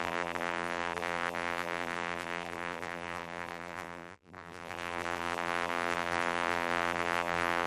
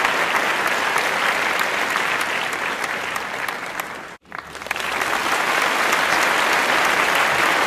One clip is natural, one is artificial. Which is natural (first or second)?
second